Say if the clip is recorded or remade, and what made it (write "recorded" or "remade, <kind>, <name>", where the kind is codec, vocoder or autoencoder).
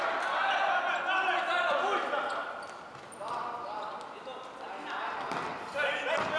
recorded